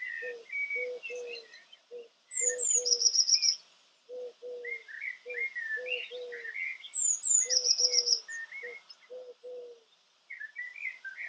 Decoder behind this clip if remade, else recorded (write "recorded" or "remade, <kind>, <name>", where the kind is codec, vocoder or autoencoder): recorded